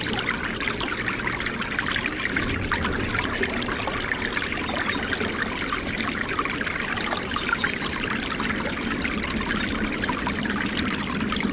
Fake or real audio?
real